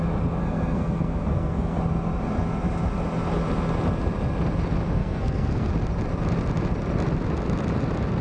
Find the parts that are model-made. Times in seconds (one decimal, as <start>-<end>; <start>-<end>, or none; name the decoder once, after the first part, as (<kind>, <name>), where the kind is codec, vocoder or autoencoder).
0.4-1.8 (codec, SNAC); 5.0-5.7